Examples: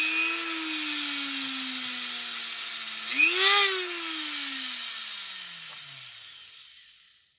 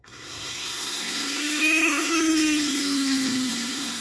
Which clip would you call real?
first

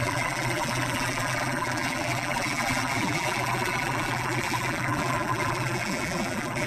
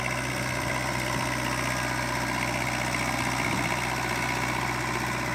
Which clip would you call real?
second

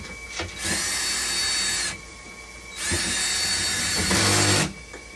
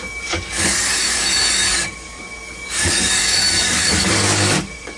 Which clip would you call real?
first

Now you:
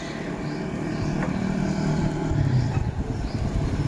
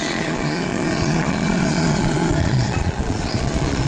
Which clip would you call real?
first